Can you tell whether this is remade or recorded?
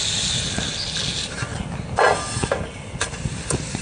recorded